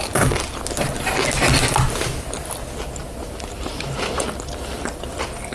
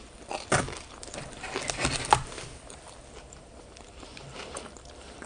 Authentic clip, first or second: first